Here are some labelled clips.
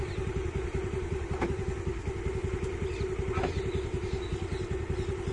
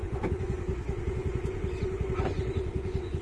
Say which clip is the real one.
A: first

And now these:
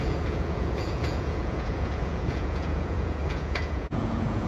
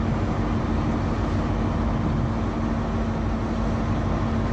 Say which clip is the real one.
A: second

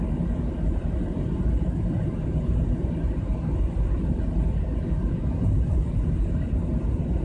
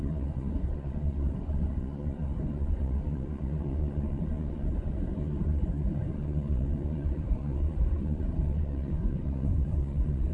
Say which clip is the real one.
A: first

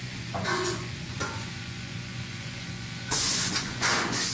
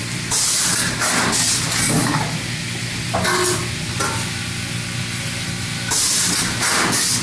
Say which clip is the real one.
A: second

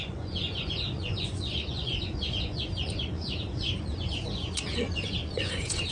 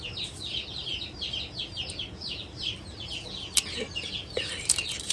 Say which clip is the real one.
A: second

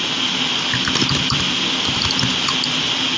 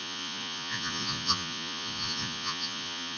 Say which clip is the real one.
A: first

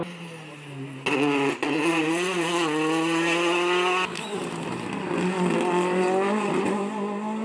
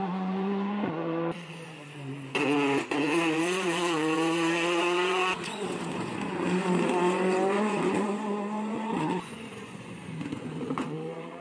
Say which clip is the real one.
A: first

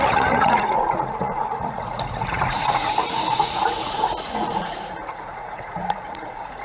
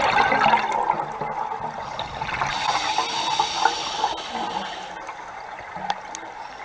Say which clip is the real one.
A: second